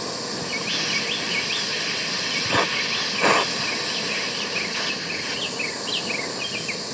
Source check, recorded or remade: recorded